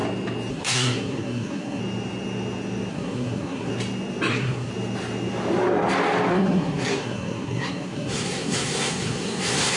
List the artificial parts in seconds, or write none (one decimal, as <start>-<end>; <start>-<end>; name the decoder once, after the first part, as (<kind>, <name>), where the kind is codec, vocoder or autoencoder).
0.5-1.8 (codec, SNAC); 2.9-3.7; 4.3-4.7; 6.3-9.8